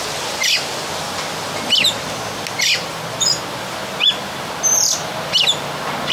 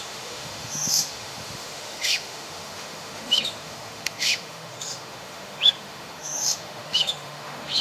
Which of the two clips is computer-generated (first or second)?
second